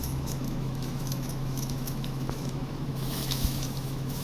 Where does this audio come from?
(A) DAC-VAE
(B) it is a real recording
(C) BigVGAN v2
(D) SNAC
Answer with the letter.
A